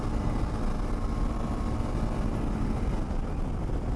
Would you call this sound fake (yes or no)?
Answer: no